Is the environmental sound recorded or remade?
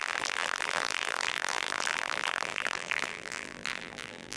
remade